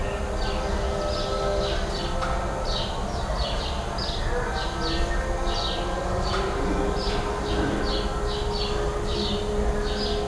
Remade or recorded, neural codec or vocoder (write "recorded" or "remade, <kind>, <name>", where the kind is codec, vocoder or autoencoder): recorded